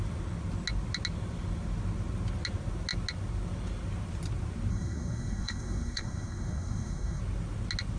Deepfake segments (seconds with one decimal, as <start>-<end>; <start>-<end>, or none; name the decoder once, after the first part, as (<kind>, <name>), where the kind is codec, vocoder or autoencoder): 4.7-7.2 (codec, SNAC)